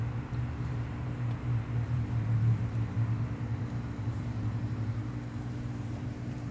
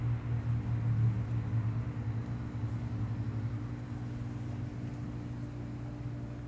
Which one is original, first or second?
second